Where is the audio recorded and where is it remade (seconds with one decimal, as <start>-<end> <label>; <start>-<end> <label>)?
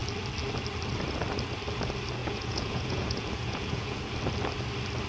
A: 0.0-2.2 recorded; 2.2-4.1 remade; 4.1-5.1 recorded